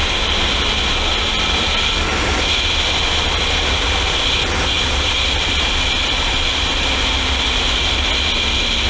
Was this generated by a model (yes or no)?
no